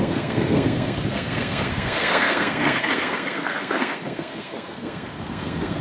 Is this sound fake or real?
fake